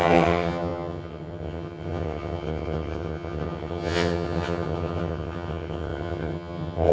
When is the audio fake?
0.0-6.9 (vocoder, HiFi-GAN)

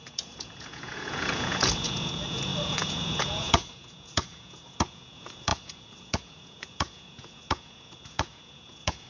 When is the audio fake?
0.0-9.1 (vocoder, Vocos)

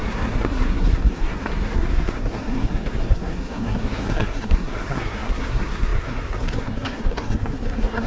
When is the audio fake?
0.0-8.1 (codec, SNAC)